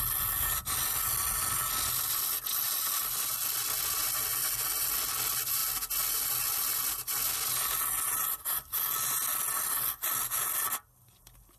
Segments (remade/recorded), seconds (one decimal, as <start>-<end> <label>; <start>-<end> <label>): 0.0-11.6 recorded